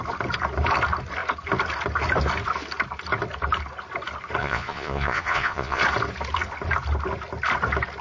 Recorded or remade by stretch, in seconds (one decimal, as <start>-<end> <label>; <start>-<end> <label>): 0.0-4.4 recorded; 4.4-5.8 remade; 5.8-8.0 recorded